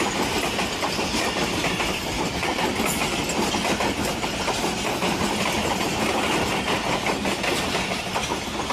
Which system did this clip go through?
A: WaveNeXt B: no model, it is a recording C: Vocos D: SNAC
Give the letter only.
B